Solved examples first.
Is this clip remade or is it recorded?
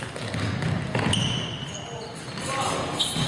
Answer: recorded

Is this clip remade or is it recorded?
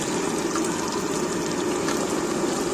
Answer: recorded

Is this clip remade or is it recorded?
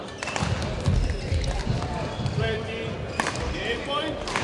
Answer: recorded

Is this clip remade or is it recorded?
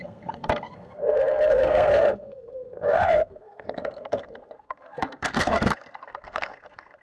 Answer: remade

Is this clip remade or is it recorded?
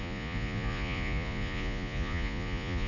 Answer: remade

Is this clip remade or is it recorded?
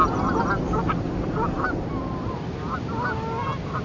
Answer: recorded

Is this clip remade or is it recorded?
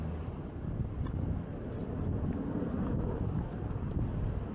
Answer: recorded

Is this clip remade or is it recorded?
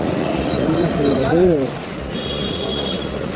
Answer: remade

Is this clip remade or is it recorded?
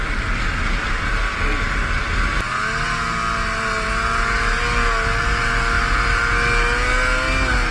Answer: recorded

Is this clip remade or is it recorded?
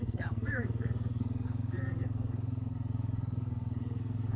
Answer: remade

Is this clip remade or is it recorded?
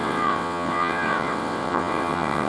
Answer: remade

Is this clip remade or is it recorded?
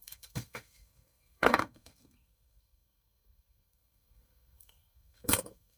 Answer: remade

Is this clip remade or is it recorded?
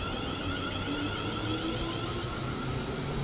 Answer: recorded